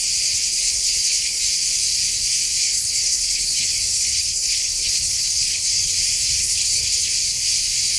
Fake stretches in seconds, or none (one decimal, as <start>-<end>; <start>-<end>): 0.5-1.4; 2.6-5.9; 6.4-7.1